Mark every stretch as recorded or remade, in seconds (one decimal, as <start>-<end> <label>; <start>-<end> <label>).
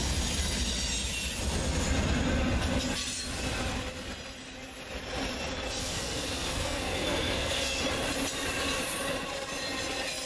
0.0-5.8 recorded; 5.8-7.8 remade; 7.8-10.3 recorded